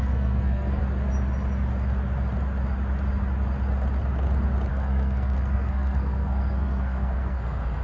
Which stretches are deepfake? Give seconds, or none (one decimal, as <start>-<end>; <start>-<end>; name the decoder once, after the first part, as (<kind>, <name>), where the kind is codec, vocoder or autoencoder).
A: 0.0-0.8 (codec, SNAC); 4.7-7.8